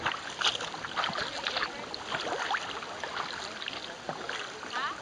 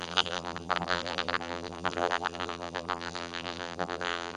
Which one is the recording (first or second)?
first